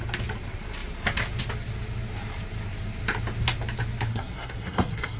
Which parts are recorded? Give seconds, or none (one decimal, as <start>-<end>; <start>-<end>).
0.0-4.1